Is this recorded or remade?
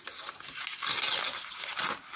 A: recorded